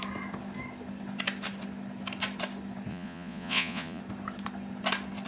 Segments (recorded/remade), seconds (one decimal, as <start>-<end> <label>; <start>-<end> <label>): 0.0-2.9 recorded; 2.9-4.0 remade; 4.0-5.3 recorded